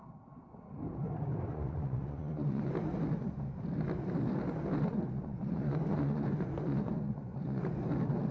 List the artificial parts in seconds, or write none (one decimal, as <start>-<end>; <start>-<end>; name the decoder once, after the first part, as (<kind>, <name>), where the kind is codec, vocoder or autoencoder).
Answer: 1.5-2.7 (vocoder, Vocos); 4.9-7.6